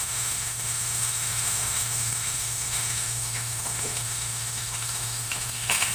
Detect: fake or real fake